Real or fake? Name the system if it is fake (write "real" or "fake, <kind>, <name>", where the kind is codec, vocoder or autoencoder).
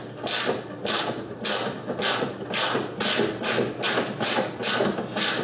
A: real